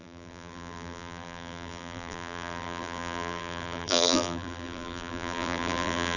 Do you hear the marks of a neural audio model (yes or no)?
yes